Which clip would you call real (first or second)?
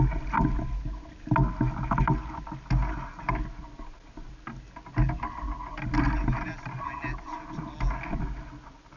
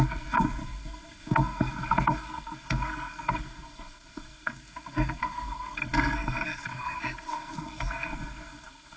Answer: first